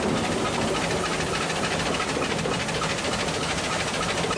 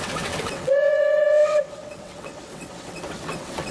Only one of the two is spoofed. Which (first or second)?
second